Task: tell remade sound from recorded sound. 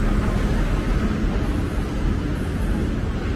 recorded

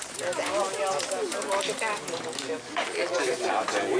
recorded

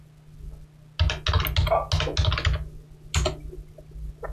recorded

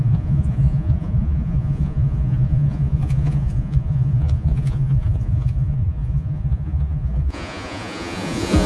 remade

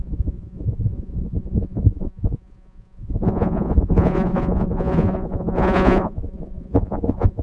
remade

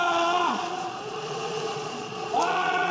remade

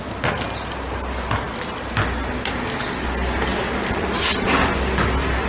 recorded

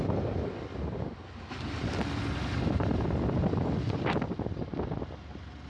recorded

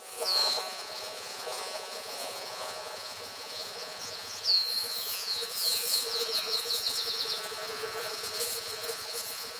remade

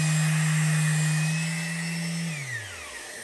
recorded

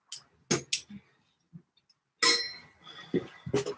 recorded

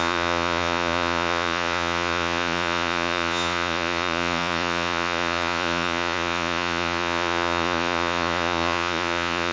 remade